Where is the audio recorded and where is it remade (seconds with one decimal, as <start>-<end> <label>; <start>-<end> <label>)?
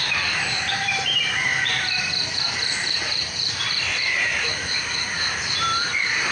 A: 0.0-6.3 remade